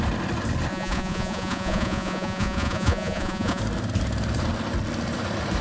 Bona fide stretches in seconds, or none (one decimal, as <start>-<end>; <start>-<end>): 0.0-0.7; 3.6-5.6